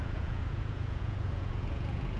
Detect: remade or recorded remade